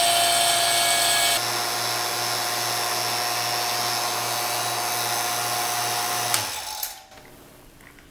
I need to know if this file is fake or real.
real